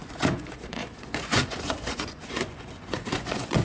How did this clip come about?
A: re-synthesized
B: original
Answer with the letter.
A